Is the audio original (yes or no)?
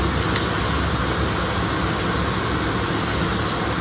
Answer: yes